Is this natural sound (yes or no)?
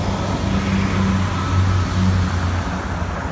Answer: yes